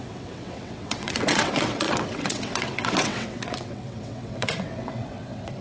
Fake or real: fake